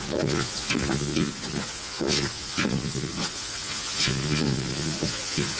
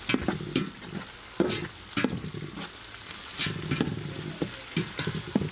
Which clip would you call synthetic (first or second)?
first